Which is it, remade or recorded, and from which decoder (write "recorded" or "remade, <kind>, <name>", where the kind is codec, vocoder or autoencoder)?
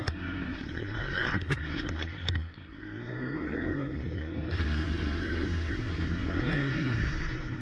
remade, codec, SNAC